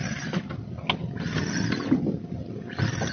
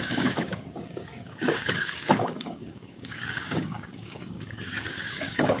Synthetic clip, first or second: second